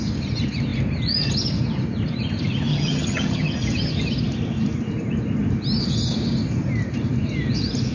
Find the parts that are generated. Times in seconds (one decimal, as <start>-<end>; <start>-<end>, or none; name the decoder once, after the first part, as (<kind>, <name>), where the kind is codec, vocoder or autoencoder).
2.7-3.5 (vocoder, HiFi-GAN)